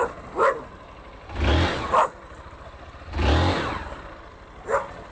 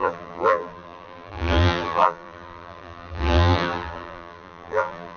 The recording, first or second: first